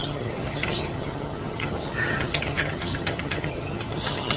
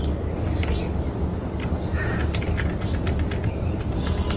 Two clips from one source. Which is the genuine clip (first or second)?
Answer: second